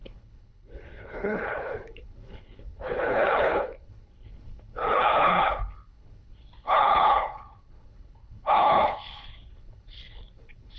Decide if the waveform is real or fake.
fake